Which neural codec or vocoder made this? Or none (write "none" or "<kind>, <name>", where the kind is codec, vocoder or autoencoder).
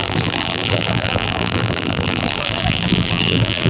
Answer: vocoder, BigVGAN v2